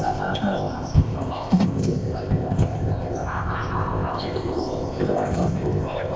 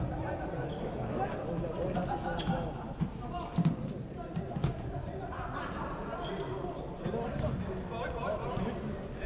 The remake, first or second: first